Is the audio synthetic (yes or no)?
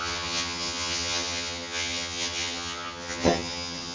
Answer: yes